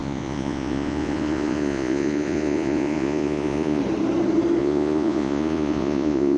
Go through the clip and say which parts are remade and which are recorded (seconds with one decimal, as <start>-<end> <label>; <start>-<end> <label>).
0.0-3.8 remade; 3.8-4.6 recorded; 4.6-6.4 remade